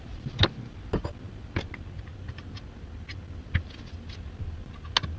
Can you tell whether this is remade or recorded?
recorded